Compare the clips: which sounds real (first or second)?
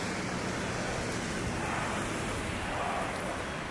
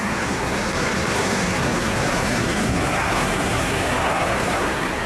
first